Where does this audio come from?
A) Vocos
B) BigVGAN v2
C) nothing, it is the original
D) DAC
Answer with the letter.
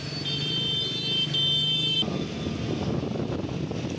C